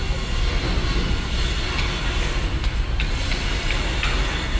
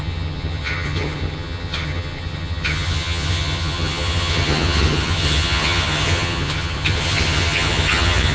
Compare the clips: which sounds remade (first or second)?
second